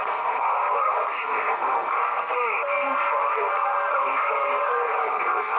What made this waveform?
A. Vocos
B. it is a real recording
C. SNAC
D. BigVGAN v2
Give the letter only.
C